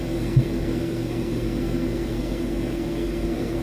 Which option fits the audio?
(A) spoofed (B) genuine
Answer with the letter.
A